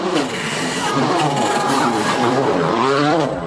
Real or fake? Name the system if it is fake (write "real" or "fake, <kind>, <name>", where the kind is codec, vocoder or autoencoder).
fake, vocoder, BigVGAN v2